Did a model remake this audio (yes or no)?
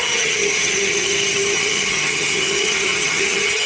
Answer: yes